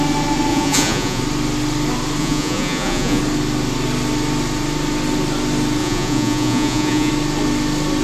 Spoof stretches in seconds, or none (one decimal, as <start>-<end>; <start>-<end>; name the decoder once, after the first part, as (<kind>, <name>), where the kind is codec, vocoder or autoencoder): 0.5-1.2 (vocoder, Vocos); 2.2-3.2; 5.8-7.1